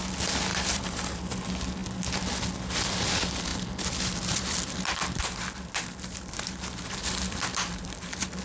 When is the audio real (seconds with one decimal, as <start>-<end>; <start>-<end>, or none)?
0.0-0.5; 1.4-3.5